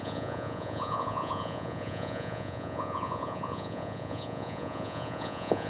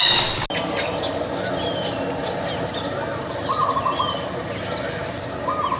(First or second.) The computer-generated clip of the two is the first